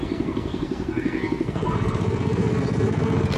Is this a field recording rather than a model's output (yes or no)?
no